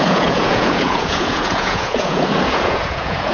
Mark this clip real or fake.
fake